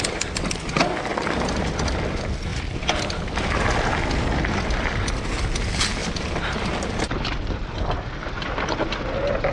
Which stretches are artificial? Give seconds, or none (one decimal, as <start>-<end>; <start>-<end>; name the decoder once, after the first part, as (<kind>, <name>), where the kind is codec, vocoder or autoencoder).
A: 1.1-1.6 (vocoder, BigVGAN v2); 2.5-3.2; 6.0-7.8